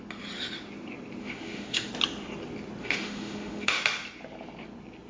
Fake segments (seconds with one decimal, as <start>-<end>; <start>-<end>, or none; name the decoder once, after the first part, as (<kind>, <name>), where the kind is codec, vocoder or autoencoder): 1.2-1.9 (autoencoder, DAC-VAE); 2.8-3.8